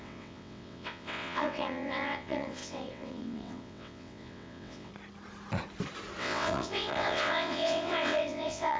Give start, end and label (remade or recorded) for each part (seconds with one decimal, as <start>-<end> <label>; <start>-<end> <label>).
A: 0.0-4.9 remade; 4.9-6.2 recorded; 6.2-8.8 remade